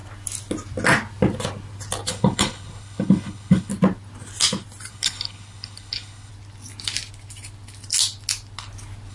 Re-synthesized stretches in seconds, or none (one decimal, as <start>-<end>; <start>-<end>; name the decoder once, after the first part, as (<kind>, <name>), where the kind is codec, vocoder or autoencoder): 2.1-3.7 (codec, HILCodec); 4.9-6.3